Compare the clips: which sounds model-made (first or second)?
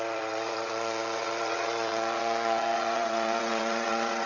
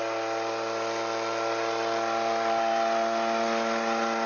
first